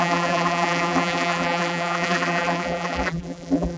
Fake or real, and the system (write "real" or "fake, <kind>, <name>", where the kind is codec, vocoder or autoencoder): fake, vocoder, BigVGAN v2